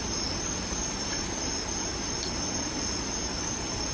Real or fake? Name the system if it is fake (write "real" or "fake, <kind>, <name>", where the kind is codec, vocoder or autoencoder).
real